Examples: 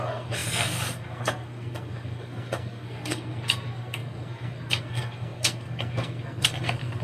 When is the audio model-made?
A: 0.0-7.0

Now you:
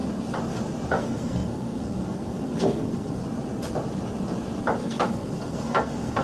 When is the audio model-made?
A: 0.9-3.2; 4.8-6.2

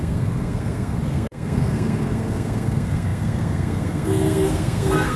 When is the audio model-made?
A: 0.0-5.2

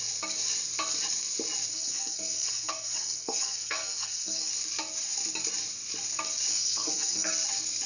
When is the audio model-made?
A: 1.7-4.5; 6.5-7.3

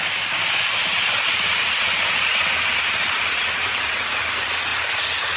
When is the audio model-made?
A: none

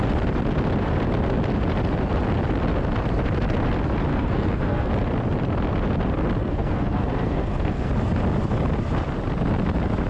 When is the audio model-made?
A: 4.1-4.9; 6.4-7.9

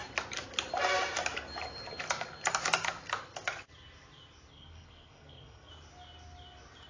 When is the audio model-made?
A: 4.5-5.7

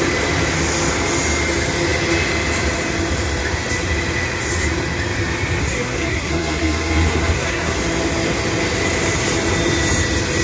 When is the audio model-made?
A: 5.6-7.8